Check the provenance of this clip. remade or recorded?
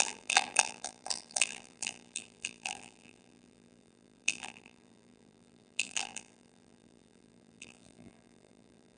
remade